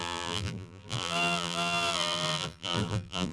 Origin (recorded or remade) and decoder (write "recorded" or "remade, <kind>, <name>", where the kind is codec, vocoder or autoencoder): remade, vocoder, BigVGAN v2